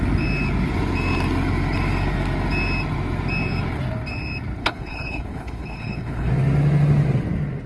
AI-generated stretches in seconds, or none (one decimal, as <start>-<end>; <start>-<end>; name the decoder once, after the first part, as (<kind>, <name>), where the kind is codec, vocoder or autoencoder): 4.6-6.3 (codec, HILCodec)